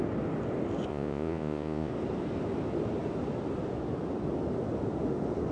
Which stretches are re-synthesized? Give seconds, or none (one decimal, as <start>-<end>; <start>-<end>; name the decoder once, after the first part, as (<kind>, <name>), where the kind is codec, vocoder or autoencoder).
0.9-1.9 (vocoder, Vocos)